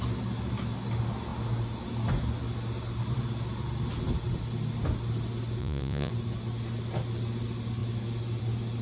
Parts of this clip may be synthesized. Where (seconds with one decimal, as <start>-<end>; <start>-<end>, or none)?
5.6-6.1